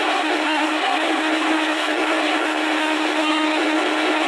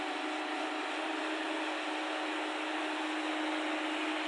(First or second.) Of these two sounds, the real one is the second